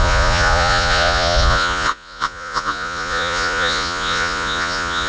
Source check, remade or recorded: remade